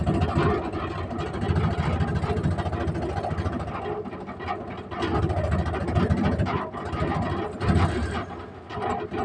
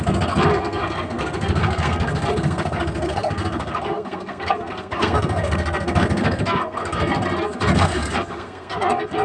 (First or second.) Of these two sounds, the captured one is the first